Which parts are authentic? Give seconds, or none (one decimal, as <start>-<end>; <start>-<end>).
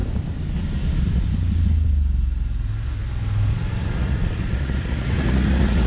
0.0-3.5